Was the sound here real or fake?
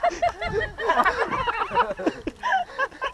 real